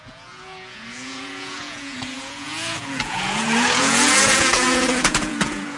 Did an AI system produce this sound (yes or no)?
yes